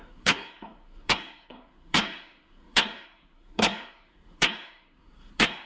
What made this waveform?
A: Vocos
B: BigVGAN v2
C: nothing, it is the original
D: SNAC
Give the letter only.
D